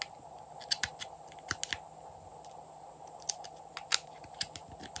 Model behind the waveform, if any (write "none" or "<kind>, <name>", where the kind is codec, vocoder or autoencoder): none